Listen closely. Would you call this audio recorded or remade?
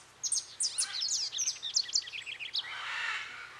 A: recorded